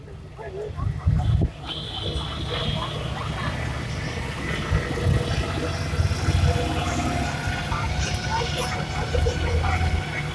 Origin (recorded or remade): recorded